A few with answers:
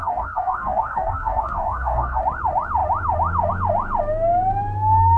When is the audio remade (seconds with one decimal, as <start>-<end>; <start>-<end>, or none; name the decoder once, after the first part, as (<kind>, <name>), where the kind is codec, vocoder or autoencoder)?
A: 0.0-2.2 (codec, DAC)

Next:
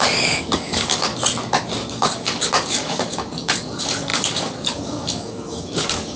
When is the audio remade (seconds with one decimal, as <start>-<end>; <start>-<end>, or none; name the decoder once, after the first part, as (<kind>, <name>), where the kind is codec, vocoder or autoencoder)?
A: 0.0-1.1 (codec, DAC); 1.9-6.2

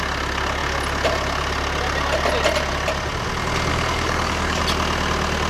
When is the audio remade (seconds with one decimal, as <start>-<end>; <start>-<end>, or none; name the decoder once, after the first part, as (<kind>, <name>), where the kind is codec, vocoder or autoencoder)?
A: 3.7-4.6 (codec, DAC)

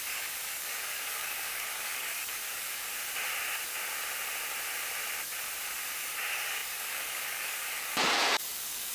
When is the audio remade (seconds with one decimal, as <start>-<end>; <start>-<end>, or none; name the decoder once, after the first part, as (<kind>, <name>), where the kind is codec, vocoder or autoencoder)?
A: 0.0-2.9 (codec, DAC); 6.0-8.9

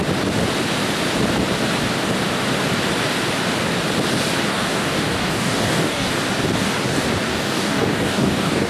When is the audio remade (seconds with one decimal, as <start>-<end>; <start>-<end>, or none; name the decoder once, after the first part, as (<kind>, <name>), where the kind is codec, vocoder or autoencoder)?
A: 4.5-6.1 (codec, DAC); 7.3-8.7

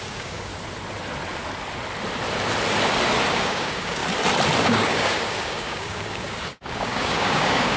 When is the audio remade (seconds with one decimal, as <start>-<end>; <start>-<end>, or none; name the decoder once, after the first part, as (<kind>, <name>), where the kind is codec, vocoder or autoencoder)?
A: 0.0-0.5 (codec, DAC); 3.3-4.0; 4.6-7.8